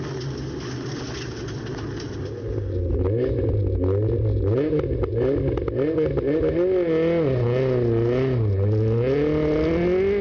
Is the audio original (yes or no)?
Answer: yes